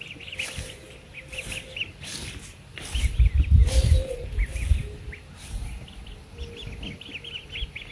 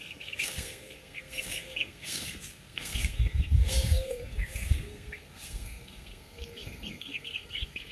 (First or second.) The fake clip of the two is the second